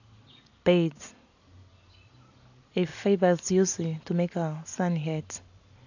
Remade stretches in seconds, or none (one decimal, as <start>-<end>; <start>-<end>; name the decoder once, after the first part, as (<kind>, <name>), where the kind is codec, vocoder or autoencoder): none